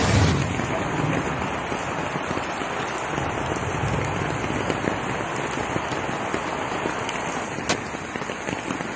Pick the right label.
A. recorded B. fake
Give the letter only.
A